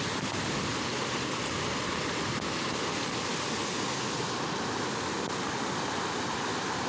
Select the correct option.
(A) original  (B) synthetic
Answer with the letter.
A